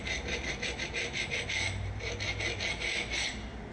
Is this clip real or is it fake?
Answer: real